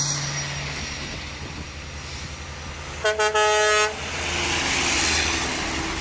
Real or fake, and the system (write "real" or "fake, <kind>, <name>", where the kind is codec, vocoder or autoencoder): real